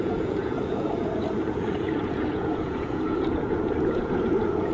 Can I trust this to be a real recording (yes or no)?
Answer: no